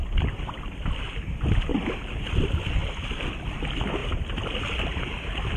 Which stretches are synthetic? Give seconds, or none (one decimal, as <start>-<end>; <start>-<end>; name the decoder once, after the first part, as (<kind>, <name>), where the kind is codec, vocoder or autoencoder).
none